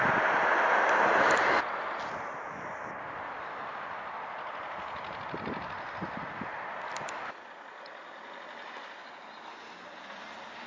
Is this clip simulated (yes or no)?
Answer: no